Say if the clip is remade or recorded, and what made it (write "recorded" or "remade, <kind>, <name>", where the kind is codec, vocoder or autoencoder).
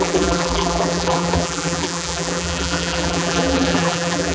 remade, vocoder, BigVGAN v2